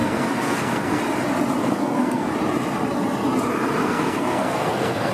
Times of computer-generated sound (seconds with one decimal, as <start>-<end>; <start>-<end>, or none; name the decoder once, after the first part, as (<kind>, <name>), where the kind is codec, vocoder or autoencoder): 0.0-1.0 (codec, SNAC); 1.6-2.3; 3.8-5.1